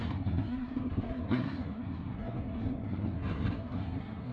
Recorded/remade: remade